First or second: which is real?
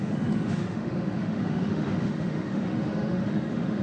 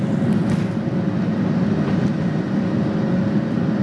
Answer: second